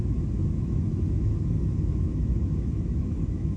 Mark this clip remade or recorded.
remade